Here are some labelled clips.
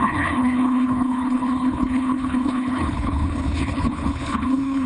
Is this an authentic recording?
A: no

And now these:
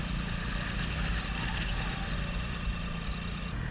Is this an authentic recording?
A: yes